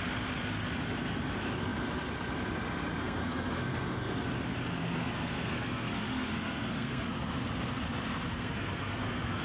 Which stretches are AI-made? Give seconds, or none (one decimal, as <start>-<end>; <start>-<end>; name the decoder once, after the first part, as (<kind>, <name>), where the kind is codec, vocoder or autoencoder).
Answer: 3.0-4.1 (codec, SNAC); 4.8-7.3; 8.3-9.4